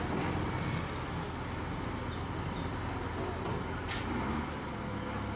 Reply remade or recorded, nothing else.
recorded